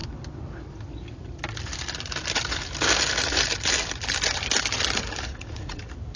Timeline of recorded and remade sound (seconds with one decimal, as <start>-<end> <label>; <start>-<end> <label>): 0.0-5.3 recorded; 5.3-5.8 remade; 5.8-6.2 recorded